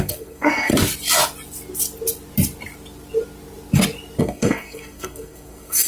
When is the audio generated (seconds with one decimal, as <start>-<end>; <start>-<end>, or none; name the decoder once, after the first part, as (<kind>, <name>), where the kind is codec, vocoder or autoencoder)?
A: 0.0-0.7 (codec, SNAC); 4.2-5.9